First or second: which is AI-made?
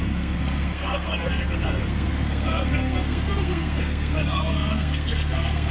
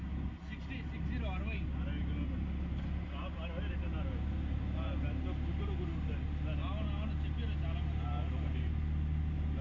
first